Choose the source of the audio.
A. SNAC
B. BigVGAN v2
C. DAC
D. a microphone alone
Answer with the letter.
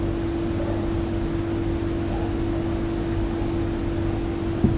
D